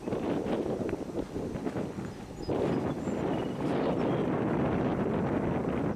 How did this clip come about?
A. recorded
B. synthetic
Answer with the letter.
A